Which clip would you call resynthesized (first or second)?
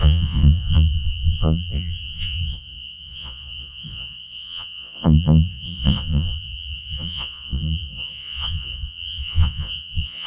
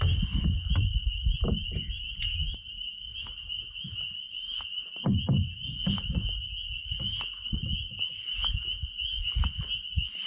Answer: first